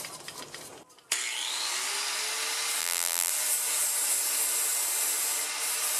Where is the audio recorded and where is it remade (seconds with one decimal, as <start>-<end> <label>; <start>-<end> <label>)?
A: 0.0-2.8 recorded; 2.8-3.3 remade; 3.3-6.0 recorded

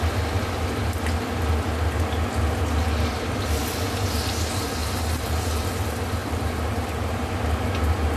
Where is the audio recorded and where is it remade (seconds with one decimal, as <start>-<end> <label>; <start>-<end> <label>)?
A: 0.0-4.8 recorded; 4.8-5.6 remade; 5.6-6.2 recorded; 6.2-7.3 remade; 7.3-8.2 recorded

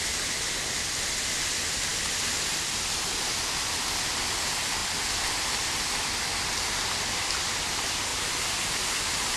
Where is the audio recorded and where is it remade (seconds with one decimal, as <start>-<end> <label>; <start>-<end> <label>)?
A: 0.0-4.8 recorded; 4.8-5.5 remade; 5.5-8.1 recorded; 8.1-8.8 remade; 8.8-9.4 recorded